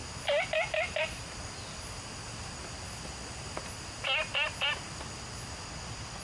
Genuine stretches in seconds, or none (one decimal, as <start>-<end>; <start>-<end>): 0.0-6.2